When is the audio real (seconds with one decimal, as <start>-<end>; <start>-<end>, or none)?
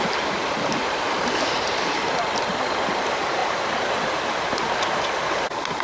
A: 2.0-3.0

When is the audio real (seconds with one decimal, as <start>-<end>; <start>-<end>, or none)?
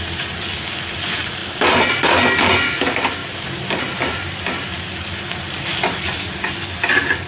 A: 0.0-7.3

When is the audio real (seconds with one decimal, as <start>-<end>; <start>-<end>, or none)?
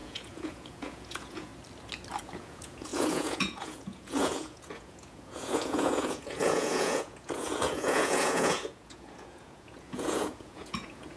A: 1.5-2.2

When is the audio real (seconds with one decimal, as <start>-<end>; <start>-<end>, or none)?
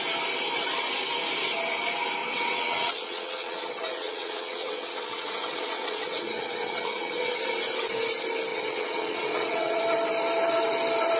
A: 0.0-2.2; 7.4-8.5; 9.8-11.2